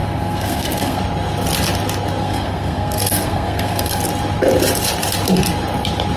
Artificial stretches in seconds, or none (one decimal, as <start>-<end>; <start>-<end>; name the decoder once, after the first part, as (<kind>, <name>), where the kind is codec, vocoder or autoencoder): 0.0-1.0 (codec, SNAC); 2.2-4.0